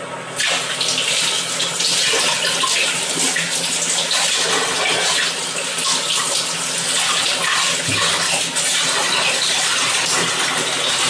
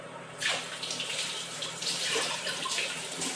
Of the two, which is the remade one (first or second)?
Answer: second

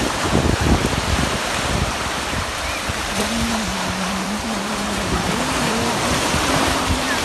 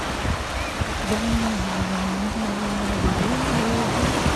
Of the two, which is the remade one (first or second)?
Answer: first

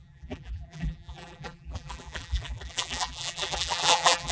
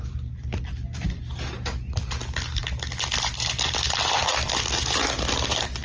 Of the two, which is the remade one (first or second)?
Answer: first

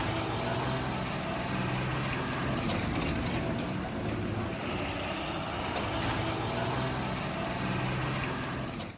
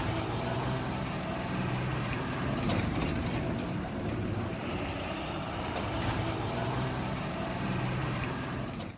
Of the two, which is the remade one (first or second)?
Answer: second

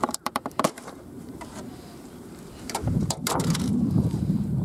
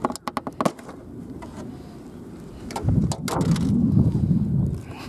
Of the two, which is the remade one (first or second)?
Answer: first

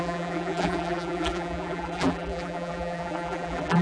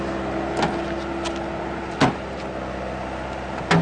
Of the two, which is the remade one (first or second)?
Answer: first